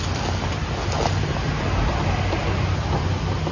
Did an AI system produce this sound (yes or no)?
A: no